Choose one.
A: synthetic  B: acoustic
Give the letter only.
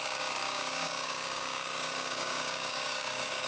A